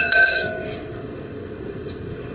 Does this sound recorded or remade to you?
remade